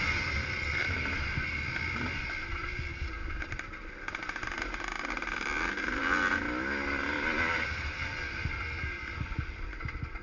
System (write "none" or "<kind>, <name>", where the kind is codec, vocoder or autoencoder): none